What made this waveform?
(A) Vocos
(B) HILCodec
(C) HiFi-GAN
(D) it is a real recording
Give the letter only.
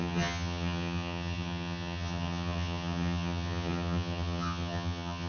C